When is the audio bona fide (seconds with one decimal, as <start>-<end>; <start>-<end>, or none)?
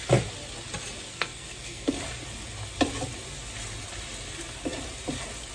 0.0-1.1; 2.0-5.5